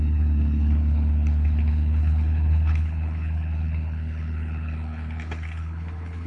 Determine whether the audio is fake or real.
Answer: fake